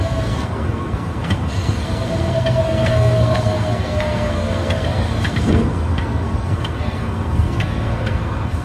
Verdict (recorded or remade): remade